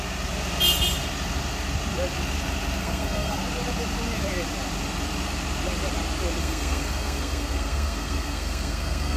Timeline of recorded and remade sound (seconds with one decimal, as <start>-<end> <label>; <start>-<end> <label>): 0.0-2.8 recorded; 2.8-3.4 remade; 3.4-6.4 recorded; 6.4-9.2 remade